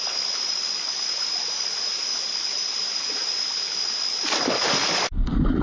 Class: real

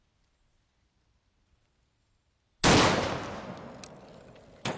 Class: real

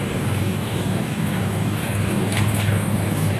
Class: fake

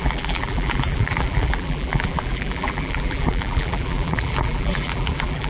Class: fake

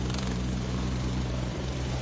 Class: fake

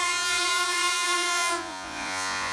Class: fake